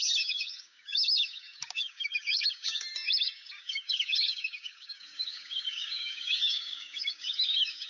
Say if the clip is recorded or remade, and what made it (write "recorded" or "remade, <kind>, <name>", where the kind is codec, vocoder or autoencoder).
remade, codec, DAC